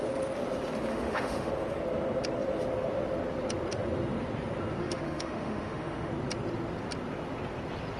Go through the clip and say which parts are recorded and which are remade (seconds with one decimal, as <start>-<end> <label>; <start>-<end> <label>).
0.0-0.9 recorded; 0.9-1.5 remade; 1.5-4.8 recorded; 4.8-6.1 remade; 6.1-8.0 recorded

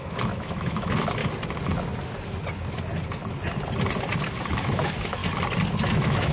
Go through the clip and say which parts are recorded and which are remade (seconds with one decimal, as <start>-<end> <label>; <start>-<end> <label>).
0.0-1.2 remade; 1.2-4.4 recorded; 4.4-5.2 remade; 5.2-5.8 recorded; 5.8-6.3 remade

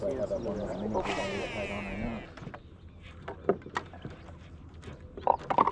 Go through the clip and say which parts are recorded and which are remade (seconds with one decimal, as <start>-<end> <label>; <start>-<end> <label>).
0.0-5.7 recorded

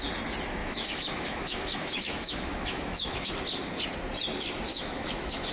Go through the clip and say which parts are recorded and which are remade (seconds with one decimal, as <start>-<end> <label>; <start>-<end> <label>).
0.0-0.6 recorded; 0.6-3.4 remade; 3.4-4.7 recorded; 4.7-5.5 remade

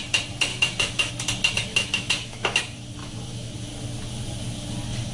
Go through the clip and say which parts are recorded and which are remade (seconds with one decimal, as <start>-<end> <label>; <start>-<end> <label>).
0.0-0.5 recorded; 0.5-1.1 remade; 1.1-1.7 recorded; 1.7-2.6 remade; 2.6-3.0 recorded; 3.0-3.5 remade; 3.5-5.1 recorded